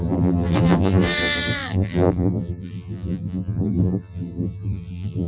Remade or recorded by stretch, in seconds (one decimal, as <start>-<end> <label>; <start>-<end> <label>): 0.0-5.3 remade